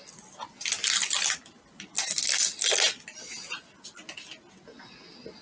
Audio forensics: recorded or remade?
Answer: recorded